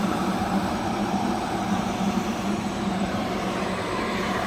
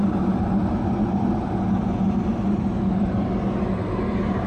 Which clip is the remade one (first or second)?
first